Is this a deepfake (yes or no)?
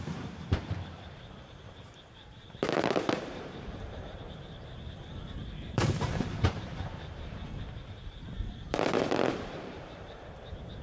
yes